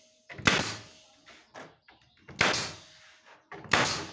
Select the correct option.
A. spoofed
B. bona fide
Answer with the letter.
B